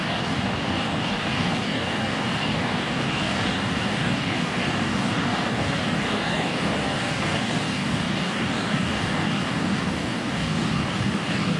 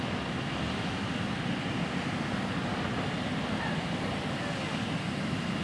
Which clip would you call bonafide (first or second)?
second